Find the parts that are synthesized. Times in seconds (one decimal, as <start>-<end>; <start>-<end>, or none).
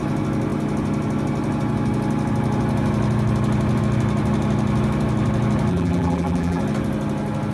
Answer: 5.7-6.6